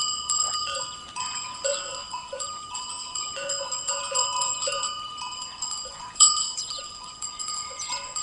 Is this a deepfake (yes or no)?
yes